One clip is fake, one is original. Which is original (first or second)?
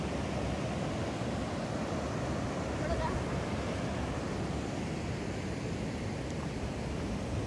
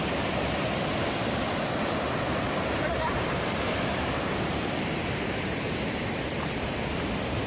first